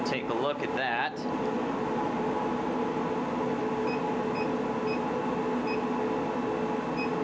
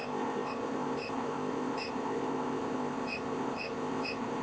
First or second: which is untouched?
first